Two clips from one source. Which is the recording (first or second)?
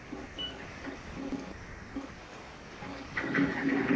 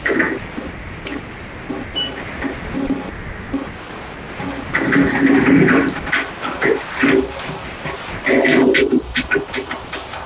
second